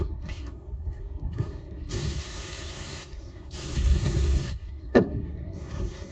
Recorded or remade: remade